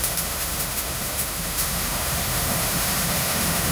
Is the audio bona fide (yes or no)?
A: no